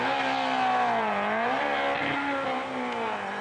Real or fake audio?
real